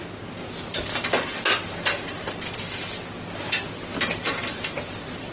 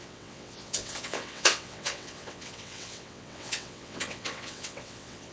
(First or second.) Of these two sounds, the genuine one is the first